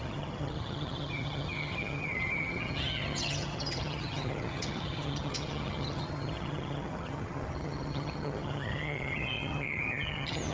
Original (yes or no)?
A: no